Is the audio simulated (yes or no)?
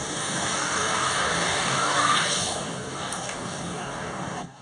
yes